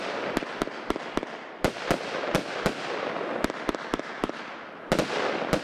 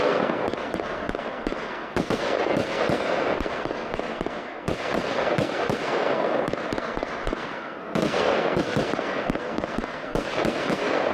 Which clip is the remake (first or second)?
second